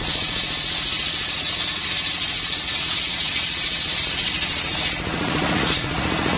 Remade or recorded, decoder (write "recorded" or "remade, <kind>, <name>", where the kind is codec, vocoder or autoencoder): remade, vocoder, Vocos